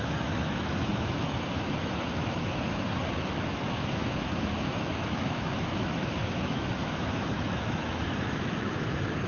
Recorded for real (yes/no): no